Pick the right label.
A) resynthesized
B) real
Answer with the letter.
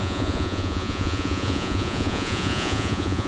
A